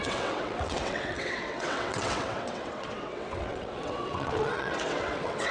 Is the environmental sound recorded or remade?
remade